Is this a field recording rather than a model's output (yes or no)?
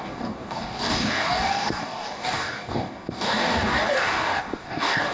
no